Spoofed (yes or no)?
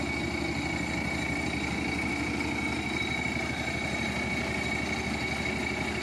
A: no